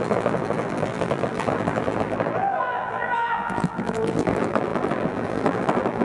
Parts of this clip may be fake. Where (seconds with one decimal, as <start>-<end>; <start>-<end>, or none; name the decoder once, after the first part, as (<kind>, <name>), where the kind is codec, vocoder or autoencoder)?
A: 0.0-6.0 (vocoder, BigVGAN v2)